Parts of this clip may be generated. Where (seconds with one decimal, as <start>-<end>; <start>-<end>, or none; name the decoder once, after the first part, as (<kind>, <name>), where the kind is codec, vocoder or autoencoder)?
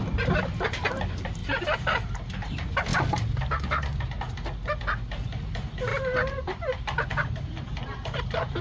1.4-2.5 (vocoder, BigVGAN v2); 5.9-6.8; 7.2-8.6